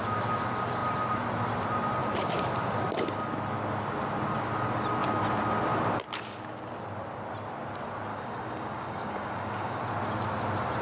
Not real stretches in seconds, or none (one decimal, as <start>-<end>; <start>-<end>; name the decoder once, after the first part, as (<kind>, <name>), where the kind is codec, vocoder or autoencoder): 8.1-9.8 (codec, DAC)